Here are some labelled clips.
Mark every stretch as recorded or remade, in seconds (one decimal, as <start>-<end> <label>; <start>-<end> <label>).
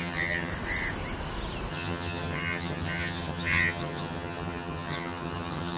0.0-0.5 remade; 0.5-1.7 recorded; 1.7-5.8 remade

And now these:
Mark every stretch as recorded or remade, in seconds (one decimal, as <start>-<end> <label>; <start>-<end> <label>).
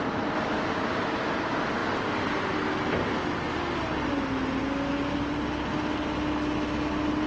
0.0-7.3 recorded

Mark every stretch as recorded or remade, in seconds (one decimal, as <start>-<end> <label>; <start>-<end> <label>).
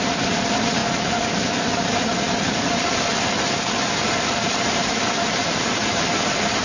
0.0-0.8 remade; 0.8-1.8 recorded; 1.8-6.6 remade